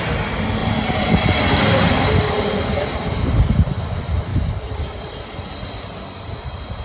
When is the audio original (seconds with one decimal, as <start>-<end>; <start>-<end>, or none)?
0.0-0.6; 3.9-4.3; 5.0-6.8